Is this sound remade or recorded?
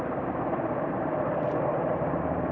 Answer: remade